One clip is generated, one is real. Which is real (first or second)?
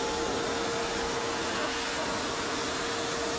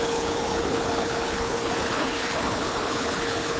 first